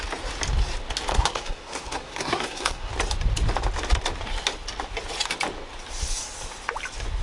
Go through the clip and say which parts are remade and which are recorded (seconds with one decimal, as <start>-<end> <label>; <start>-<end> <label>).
0.0-1.1 recorded; 1.1-2.9 remade; 2.9-7.2 recorded